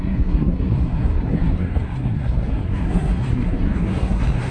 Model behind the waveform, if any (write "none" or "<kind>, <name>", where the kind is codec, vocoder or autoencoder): codec, SNAC